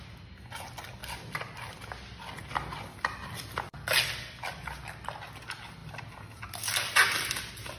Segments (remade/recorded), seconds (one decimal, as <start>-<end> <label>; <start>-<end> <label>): 0.0-7.8 recorded